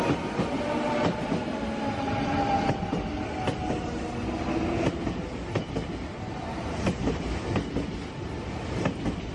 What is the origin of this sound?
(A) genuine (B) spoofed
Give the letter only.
A